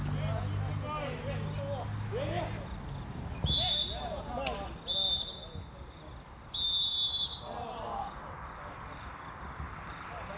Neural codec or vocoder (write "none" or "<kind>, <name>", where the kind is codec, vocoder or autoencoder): none